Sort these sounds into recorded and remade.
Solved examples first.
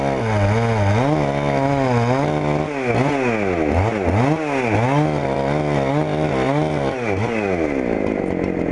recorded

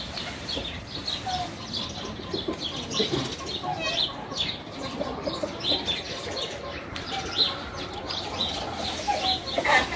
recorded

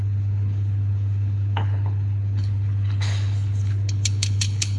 remade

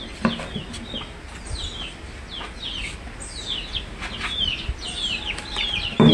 recorded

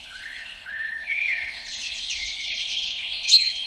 remade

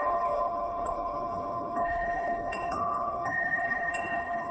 remade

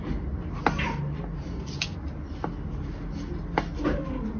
recorded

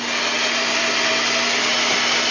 recorded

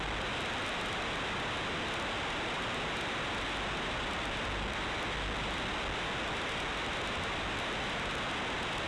recorded